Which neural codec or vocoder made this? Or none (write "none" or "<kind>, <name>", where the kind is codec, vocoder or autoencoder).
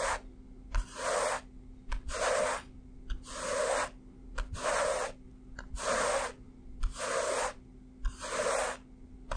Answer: none